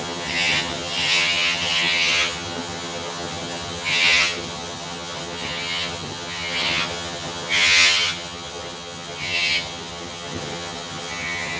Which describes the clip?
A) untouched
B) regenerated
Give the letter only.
B